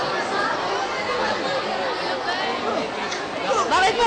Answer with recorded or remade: recorded